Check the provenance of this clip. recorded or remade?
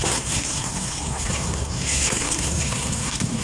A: remade